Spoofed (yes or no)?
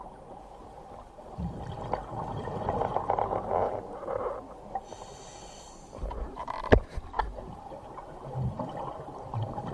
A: no